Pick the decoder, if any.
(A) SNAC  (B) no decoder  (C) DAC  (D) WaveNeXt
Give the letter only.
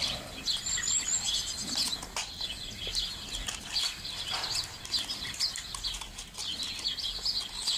B